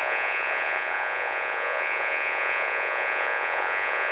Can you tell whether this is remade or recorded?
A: remade